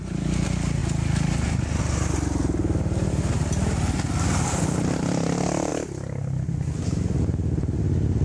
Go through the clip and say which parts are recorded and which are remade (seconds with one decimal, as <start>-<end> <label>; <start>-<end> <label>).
0.0-8.2 recorded